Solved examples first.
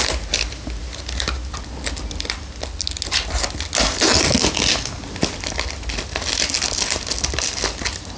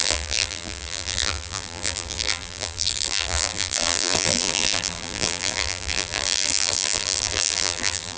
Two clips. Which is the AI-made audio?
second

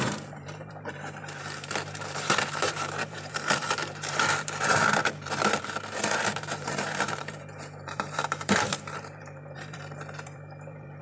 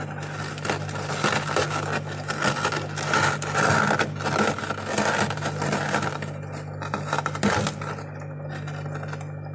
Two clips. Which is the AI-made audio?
first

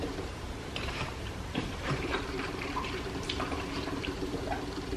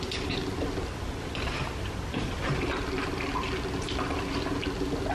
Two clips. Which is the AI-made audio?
first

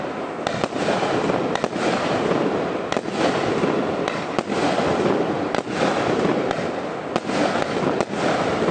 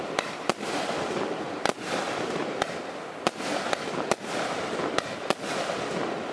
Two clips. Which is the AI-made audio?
second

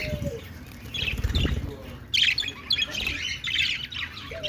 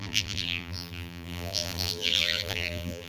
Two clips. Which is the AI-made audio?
second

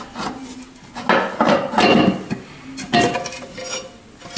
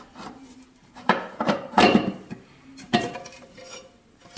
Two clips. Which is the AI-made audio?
second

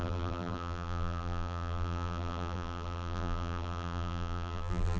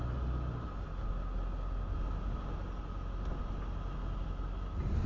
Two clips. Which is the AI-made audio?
first